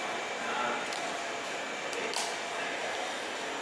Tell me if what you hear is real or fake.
real